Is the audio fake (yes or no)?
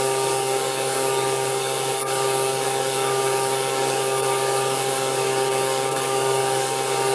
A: yes